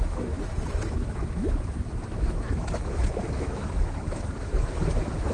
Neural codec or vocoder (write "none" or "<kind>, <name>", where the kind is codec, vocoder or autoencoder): autoencoder, DAC-VAE